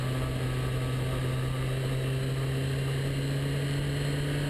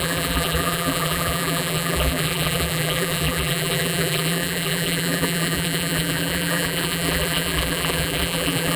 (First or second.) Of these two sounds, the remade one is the second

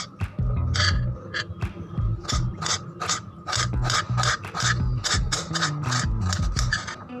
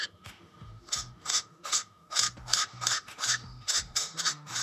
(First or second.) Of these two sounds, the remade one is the second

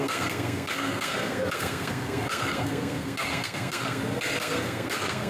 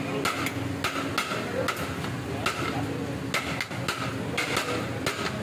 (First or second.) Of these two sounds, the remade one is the first